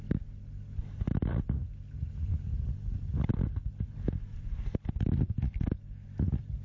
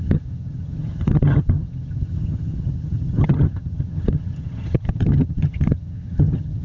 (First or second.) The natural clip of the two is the first